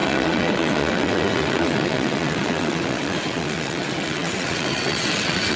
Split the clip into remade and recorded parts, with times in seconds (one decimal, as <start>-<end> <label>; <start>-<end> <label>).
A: 0.0-5.6 remade